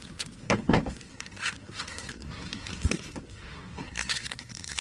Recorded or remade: remade